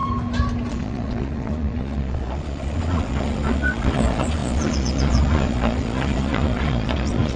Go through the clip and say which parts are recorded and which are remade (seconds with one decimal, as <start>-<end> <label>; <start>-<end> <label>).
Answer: 0.0-0.7 recorded; 0.7-7.4 remade